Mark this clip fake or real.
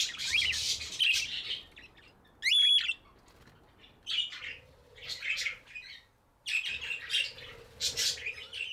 real